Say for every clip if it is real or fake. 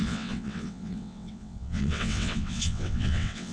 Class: fake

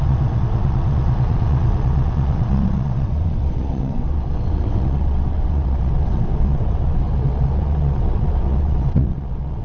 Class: fake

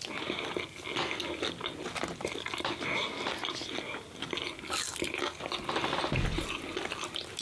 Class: real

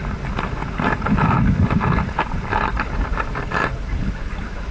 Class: real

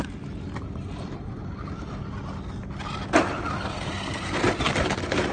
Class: real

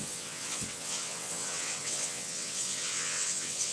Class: fake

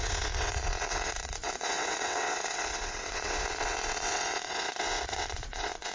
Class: fake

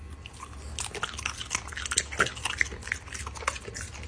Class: real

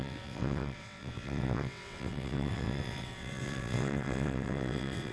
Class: fake